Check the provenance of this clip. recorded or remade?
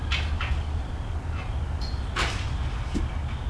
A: recorded